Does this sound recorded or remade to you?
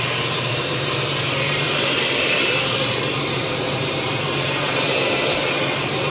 remade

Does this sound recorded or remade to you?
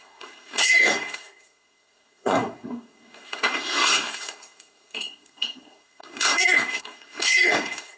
remade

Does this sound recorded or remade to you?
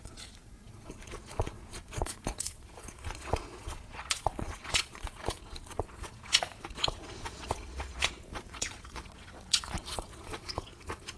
remade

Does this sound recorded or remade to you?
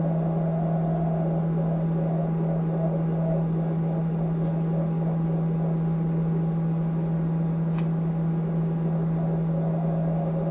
recorded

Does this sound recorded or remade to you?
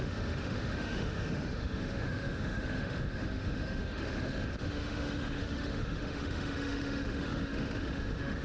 remade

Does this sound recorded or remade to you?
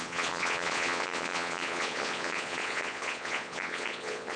remade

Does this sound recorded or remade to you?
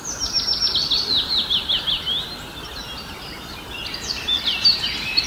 recorded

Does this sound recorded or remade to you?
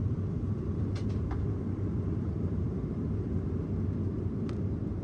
remade